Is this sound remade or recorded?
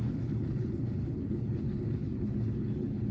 remade